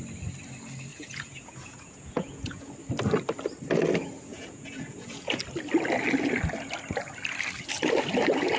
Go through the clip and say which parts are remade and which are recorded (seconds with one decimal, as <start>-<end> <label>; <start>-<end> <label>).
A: 0.0-0.9 recorded; 0.9-2.7 remade; 2.7-4.3 recorded; 4.3-5.4 remade; 5.4-8.6 recorded